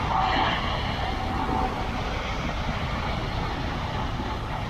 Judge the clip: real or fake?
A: real